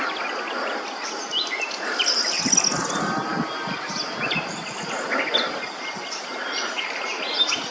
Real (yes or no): yes